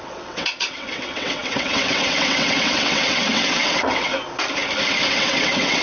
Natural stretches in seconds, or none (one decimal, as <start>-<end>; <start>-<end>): 4.1-5.1